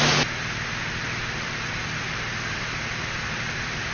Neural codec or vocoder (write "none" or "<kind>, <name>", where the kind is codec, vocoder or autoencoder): none